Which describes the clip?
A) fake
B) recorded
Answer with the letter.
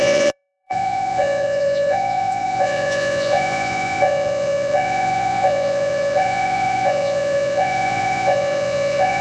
A